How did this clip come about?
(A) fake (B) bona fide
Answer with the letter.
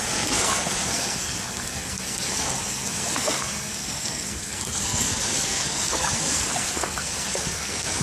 A